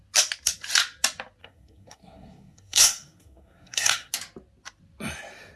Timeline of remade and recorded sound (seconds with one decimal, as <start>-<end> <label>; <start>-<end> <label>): 0.0-1.4 recorded; 1.4-4.1 remade; 4.1-5.6 recorded